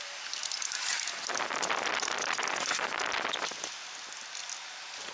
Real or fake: real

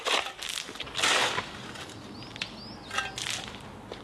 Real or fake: real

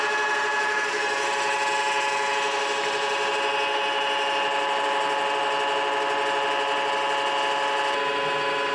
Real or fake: real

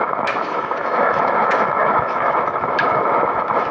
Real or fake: fake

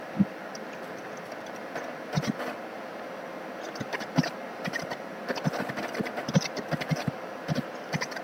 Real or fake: real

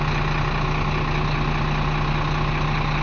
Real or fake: real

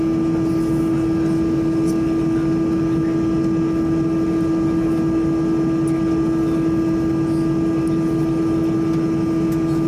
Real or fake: real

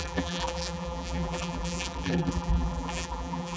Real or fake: fake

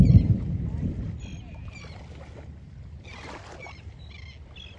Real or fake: real